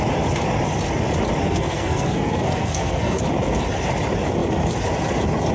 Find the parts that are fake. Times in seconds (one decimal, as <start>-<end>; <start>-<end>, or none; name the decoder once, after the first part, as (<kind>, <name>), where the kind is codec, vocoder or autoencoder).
1.4-3.2 (codec, SNAC)